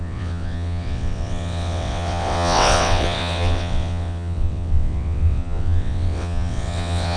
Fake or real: fake